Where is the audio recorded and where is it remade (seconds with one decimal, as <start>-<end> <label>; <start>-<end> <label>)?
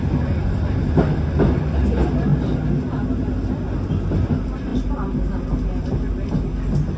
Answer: 0.0-7.0 recorded